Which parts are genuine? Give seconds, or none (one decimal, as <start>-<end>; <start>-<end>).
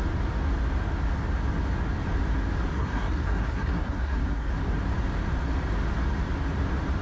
0.0-2.7; 4.5-7.0